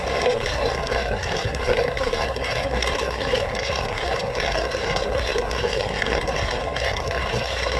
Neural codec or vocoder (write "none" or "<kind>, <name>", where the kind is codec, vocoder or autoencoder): codec, SNAC